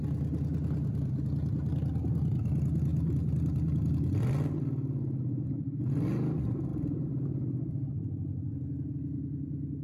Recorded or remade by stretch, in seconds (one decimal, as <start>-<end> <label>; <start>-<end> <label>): 0.0-9.8 recorded